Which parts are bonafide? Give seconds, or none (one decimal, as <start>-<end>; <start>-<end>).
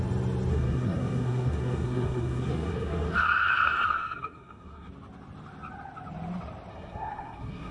0.0-0.5; 4.9-6.7